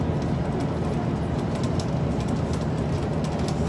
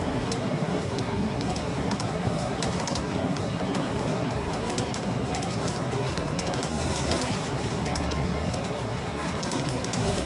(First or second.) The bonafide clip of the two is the first